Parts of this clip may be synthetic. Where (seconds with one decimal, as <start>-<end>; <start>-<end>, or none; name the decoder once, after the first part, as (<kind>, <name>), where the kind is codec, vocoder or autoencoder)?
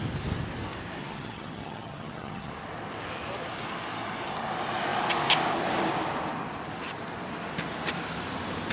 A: 1.0-2.5 (vocoder, HiFi-GAN)